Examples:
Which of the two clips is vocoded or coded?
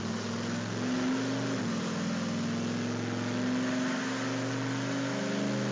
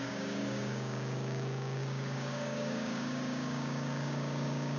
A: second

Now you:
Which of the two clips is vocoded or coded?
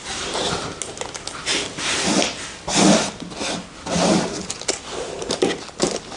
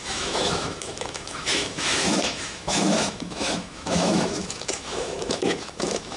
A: second